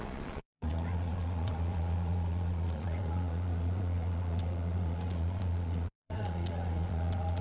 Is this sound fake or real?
fake